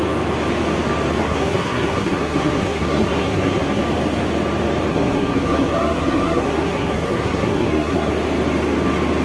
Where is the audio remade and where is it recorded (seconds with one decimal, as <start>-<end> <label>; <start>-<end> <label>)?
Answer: 0.0-1.2 recorded; 1.2-3.8 remade; 3.8-4.9 recorded; 4.9-8.1 remade; 8.1-9.2 recorded